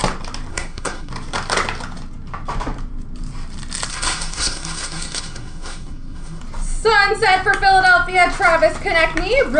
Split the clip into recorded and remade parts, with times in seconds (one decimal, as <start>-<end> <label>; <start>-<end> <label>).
0.0-0.5 recorded; 0.5-1.1 remade; 1.1-3.9 recorded; 3.9-6.4 remade; 6.4-9.6 recorded